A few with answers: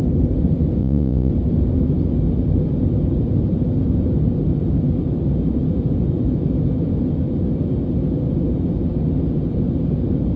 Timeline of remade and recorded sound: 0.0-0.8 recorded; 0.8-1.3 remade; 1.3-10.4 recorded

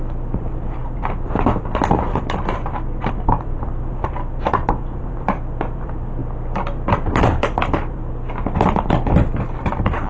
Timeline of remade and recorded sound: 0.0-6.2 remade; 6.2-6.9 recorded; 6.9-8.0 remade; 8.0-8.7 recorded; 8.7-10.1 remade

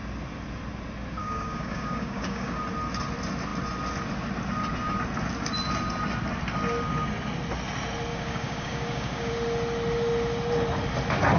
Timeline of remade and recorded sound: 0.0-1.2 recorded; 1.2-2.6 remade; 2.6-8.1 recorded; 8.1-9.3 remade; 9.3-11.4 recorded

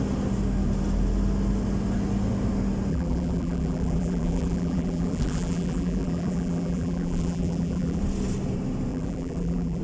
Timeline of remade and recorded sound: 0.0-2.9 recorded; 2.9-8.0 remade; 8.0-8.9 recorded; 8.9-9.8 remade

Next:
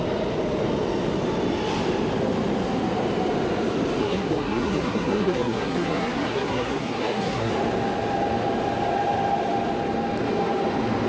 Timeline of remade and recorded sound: 0.0-4.0 recorded; 4.0-7.5 remade; 7.5-11.1 recorded